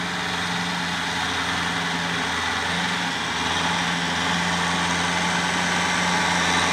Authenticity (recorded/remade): recorded